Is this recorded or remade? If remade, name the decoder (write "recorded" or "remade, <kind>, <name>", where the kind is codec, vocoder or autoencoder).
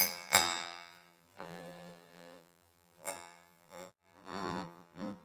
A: remade, vocoder, BigVGAN v2